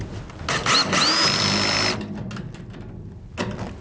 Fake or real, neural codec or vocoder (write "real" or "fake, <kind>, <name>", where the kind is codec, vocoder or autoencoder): real